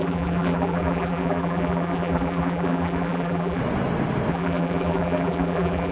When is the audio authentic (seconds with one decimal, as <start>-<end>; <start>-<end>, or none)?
3.6-4.3